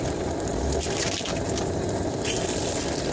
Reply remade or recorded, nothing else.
recorded